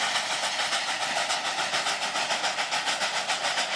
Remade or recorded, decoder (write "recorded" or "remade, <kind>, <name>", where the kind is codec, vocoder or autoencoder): recorded